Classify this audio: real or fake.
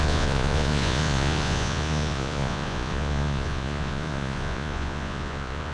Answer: fake